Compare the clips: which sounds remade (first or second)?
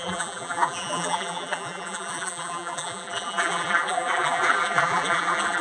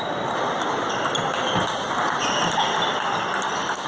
first